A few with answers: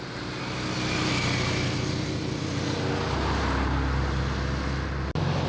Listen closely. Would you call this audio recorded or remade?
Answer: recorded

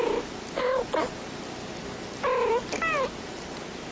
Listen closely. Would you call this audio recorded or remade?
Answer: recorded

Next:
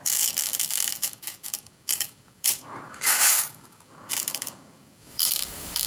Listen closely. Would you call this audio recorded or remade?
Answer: remade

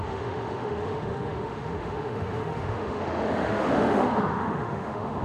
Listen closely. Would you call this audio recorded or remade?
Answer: remade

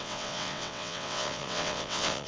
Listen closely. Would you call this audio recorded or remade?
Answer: remade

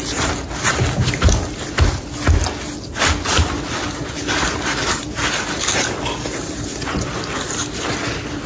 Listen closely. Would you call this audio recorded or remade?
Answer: recorded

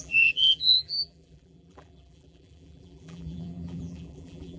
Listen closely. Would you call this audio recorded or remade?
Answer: remade